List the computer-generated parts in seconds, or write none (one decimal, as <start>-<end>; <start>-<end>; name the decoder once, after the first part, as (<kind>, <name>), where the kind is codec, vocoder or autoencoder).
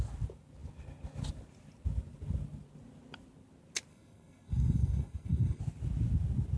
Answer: 3.9-5.6 (codec, SNAC)